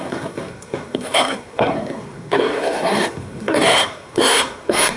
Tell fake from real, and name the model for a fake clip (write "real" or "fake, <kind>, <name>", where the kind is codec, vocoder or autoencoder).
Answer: fake, codec, SNAC